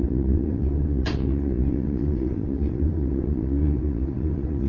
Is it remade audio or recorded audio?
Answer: remade